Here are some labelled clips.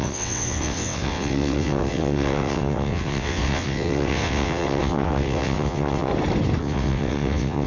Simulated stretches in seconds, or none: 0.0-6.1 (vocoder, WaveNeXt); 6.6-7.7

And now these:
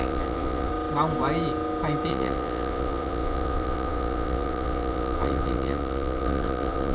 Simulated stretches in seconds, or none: 0.0-0.7 (vocoder, WaveNeXt); 2.1-6.9

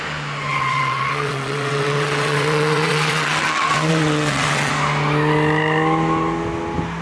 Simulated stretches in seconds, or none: 0.5-4.7 (vocoder, WaveNeXt)

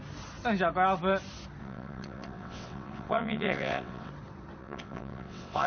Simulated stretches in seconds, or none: 1.6-4.1 (vocoder, WaveNeXt); 4.6-5.7

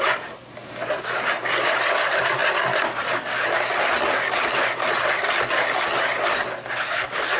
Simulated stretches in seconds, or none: none

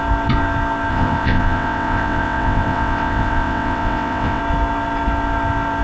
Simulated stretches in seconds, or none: 0.9-4.4 (vocoder, WaveNeXt)